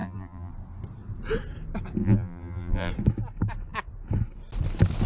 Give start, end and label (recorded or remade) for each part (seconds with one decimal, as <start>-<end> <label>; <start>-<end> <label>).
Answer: 0.0-0.5 remade; 0.5-2.0 recorded; 2.0-2.9 remade; 2.9-5.1 recorded